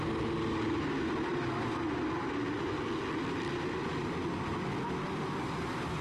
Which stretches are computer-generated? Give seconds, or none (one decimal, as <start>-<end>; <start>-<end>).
none